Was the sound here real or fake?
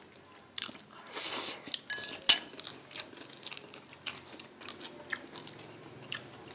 real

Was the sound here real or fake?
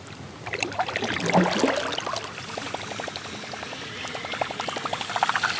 real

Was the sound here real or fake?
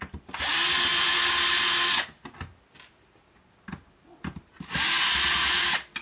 real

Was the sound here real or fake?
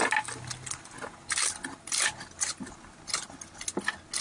real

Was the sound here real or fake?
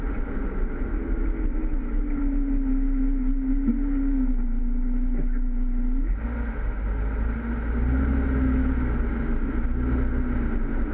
real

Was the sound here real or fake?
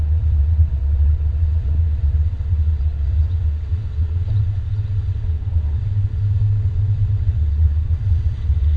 fake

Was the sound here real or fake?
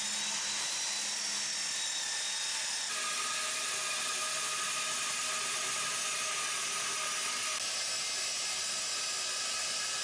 real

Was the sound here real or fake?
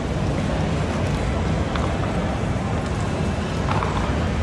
real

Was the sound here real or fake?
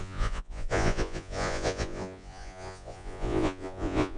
fake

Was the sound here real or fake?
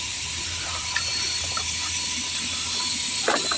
real